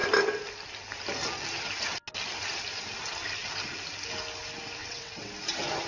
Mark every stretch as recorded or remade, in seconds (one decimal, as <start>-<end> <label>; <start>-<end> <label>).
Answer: 0.0-4.8 recorded; 4.8-5.3 remade; 5.3-5.9 recorded